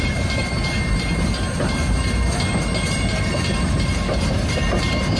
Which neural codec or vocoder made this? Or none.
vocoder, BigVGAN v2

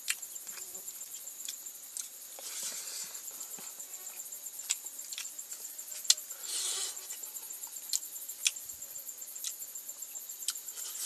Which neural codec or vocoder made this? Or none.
none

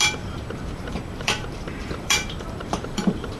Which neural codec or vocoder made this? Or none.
vocoder, BigVGAN v2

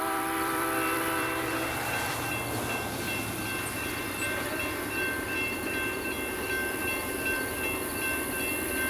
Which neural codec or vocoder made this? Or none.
vocoder, BigVGAN v2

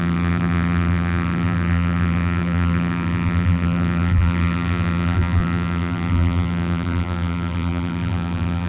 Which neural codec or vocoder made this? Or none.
vocoder, BigVGAN v2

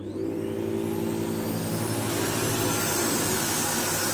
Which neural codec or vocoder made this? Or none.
none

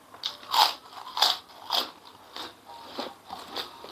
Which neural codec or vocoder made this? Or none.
none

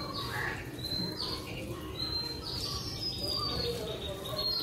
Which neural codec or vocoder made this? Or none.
vocoder, BigVGAN v2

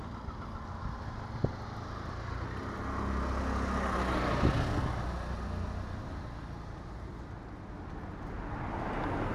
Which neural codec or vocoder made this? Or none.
none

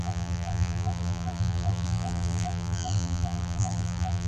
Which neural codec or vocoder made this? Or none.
vocoder, BigVGAN v2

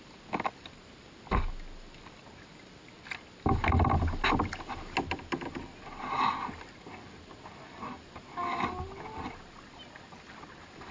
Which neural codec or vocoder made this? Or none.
none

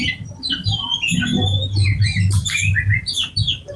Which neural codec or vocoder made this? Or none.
none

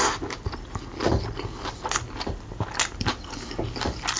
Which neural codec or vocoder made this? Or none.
none